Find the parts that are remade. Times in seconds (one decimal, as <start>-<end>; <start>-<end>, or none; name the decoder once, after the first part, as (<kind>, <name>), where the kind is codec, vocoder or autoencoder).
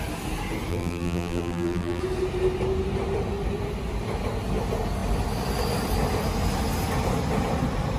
0.7-2.0 (vocoder, BigVGAN v2)